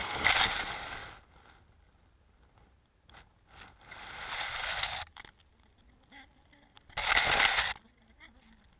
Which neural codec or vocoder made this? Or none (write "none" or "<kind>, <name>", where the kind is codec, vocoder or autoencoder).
none